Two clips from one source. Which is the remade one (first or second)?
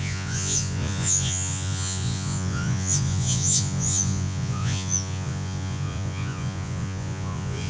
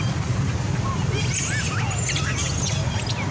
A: first